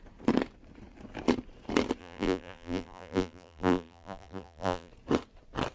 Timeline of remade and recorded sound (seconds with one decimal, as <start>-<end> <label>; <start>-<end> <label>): 0.0-2.0 recorded; 2.0-4.9 remade; 4.9-5.7 recorded